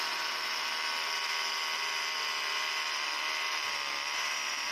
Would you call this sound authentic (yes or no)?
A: yes